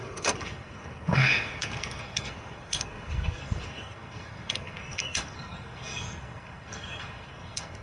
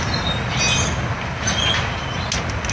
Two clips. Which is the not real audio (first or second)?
first